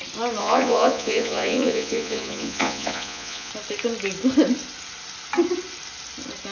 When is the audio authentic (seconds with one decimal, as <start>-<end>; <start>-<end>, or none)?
0.0-0.4; 3.5-6.5